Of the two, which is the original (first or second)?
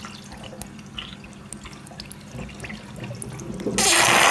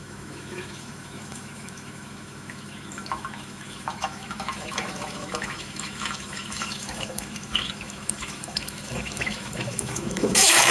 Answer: first